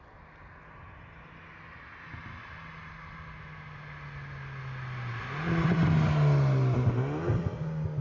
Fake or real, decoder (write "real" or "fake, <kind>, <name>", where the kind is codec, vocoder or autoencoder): real